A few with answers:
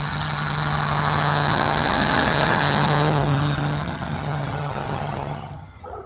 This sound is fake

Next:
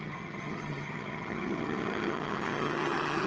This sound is fake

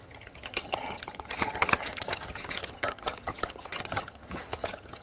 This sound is fake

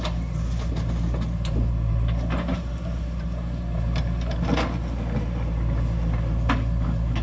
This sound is real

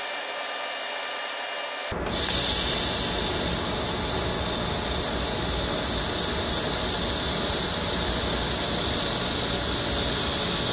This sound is real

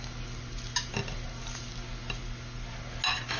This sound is real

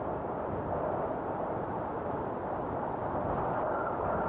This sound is real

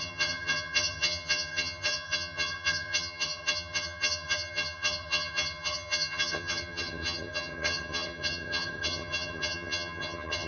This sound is fake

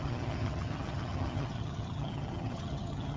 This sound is fake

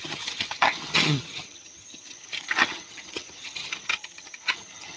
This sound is fake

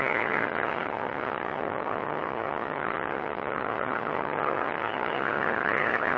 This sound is fake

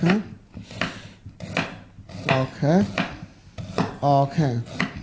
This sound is real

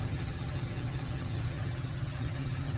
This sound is fake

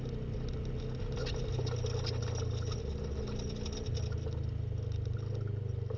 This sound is real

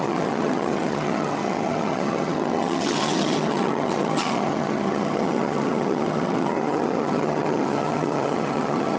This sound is fake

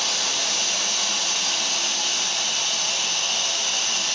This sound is real